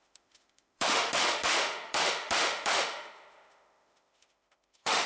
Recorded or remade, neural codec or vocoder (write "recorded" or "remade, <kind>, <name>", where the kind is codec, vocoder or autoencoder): remade, autoencoder, DAC-VAE